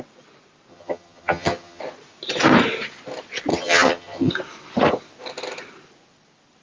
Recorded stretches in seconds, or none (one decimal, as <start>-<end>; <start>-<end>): 0.0-0.7; 1.8-3.5; 4.3-6.6